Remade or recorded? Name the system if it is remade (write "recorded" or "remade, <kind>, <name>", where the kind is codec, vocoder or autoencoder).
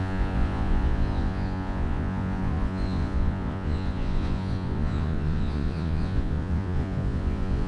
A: remade, vocoder, Vocos